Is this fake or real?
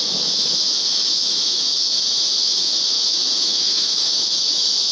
fake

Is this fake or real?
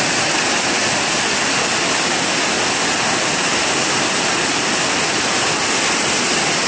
real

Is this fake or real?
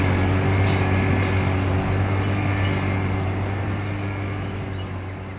real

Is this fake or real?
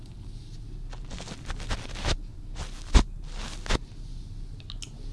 real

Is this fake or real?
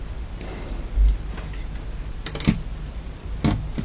real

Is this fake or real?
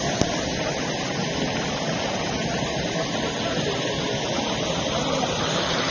real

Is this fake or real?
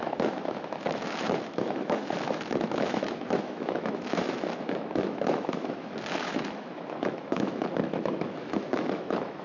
fake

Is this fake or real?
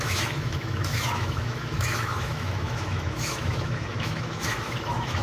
fake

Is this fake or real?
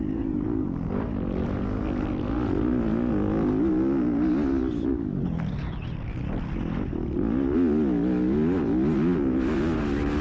real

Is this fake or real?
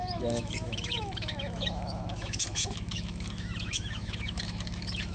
fake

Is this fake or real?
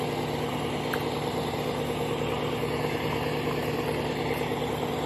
real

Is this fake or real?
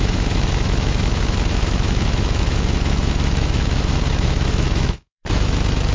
fake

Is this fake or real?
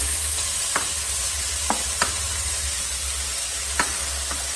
real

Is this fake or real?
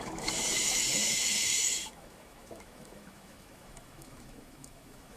fake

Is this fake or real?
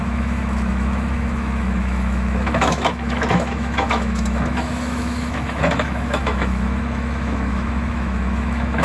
fake